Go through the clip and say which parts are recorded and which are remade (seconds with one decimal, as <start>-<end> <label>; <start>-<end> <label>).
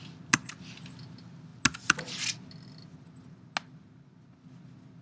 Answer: 0.0-5.0 recorded